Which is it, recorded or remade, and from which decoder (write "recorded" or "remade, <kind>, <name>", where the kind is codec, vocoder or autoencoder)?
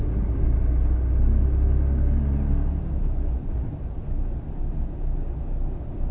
recorded